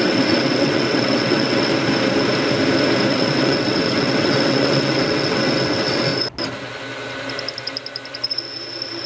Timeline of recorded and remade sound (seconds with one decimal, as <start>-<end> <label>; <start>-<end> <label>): 0.0-1.7 remade; 1.7-3.1 recorded; 3.1-6.1 remade; 6.1-9.1 recorded